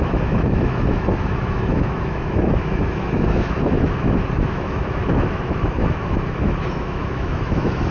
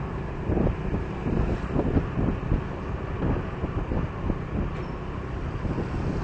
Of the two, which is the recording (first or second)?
second